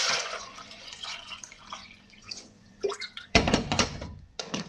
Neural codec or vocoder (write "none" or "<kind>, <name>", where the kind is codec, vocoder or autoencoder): vocoder, Vocos